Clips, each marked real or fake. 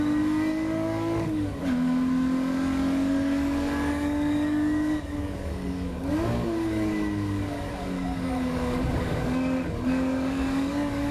fake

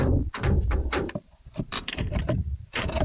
fake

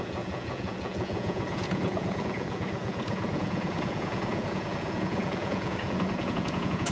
fake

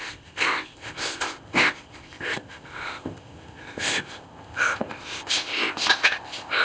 fake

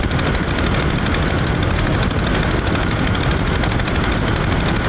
real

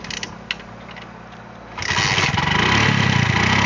real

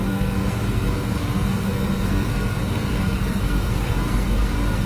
fake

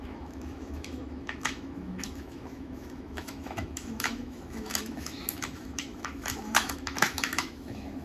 fake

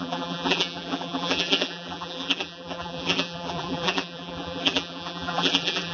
fake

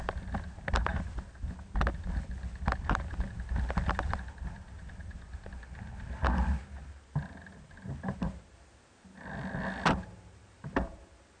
real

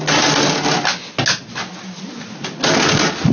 real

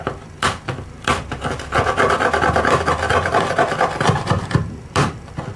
fake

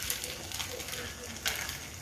real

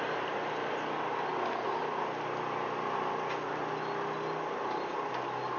real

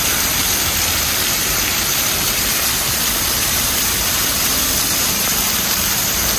fake